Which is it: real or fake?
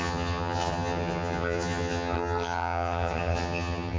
fake